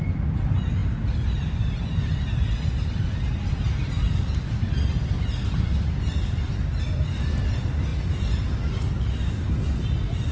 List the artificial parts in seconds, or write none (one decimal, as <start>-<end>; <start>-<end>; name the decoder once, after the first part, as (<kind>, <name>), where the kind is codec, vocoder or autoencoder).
none